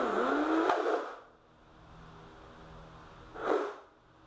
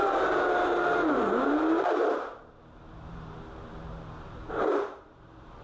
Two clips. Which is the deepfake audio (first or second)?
second